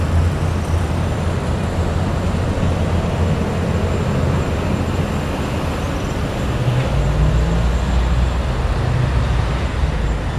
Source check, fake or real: real